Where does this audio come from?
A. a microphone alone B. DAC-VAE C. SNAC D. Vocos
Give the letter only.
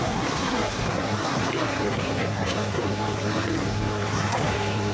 C